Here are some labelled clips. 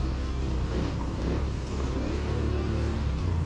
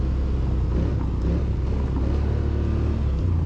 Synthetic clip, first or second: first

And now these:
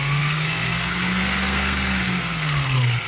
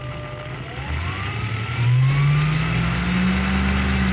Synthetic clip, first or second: first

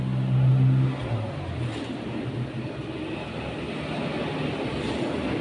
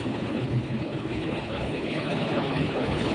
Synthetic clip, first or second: second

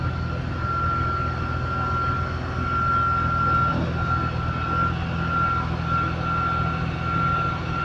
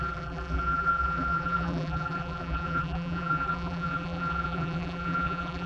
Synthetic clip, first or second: second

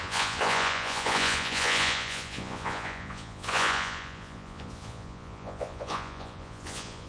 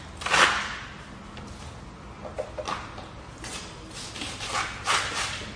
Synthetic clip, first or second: first